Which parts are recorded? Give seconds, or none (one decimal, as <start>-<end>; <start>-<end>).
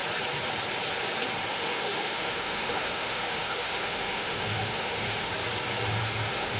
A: 0.0-1.5; 5.3-6.0